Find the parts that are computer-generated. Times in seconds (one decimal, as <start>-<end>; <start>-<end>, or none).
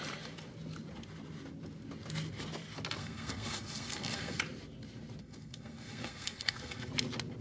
3.0-4.4; 5.2-6.9